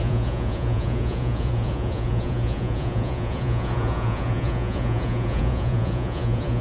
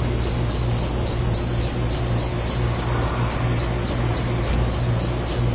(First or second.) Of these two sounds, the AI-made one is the first